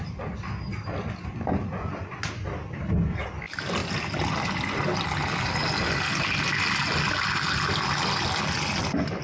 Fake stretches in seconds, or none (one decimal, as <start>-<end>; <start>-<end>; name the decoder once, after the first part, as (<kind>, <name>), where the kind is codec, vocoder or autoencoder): none